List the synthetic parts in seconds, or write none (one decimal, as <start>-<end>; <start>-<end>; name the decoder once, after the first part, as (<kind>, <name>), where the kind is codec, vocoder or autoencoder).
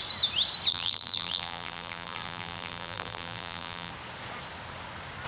0.7-3.9 (vocoder, BigVGAN v2)